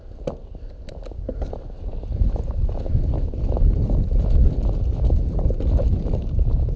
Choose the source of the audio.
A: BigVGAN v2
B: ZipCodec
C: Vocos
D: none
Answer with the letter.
D